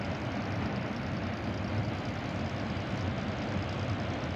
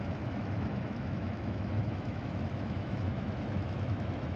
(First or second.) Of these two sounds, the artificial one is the second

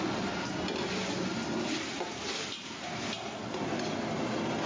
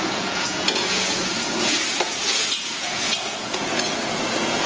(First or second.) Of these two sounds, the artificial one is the second